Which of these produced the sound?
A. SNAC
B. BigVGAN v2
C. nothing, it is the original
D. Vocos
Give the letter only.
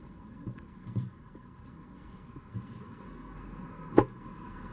A